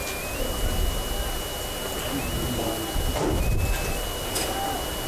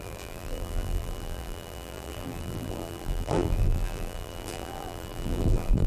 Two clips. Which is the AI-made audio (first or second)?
second